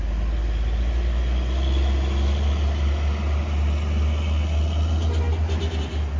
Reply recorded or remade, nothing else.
recorded